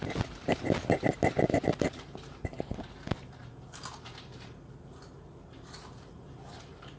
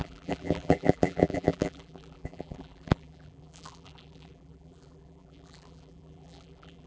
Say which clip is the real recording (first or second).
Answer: first